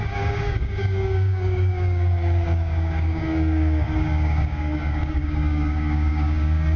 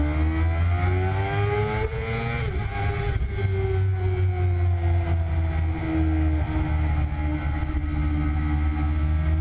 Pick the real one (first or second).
second